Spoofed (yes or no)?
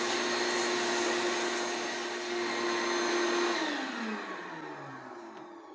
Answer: no